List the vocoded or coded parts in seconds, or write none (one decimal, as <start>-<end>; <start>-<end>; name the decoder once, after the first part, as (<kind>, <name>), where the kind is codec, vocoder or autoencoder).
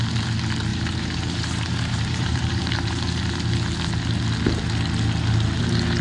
0.7-2.9 (vocoder, BigVGAN v2)